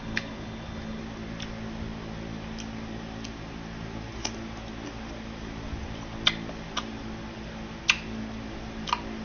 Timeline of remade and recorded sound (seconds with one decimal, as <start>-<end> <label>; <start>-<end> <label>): 0.0-1.0 remade; 1.0-9.2 recorded